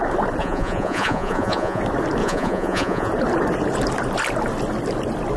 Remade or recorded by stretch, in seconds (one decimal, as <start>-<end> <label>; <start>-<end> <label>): 0.0-0.4 recorded; 0.4-1.8 remade; 1.8-2.2 recorded; 2.2-3.1 remade; 3.1-5.4 recorded